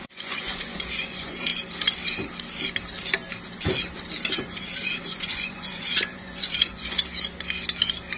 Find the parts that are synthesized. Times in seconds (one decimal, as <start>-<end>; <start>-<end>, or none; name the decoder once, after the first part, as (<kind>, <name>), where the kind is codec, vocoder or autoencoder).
0.0-1.5 (vocoder, Vocos); 4.4-7.0